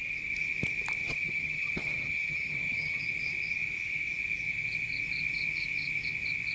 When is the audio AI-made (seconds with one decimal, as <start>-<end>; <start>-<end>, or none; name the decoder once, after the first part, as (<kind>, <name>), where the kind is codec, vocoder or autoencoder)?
1.0-3.0 (vocoder, HiFi-GAN)